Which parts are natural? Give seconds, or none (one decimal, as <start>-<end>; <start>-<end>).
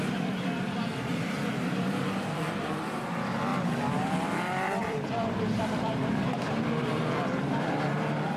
none